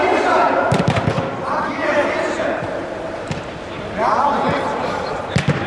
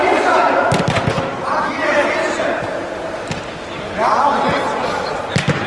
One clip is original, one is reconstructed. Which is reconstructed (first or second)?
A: first